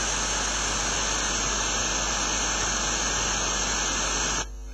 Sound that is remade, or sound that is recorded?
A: recorded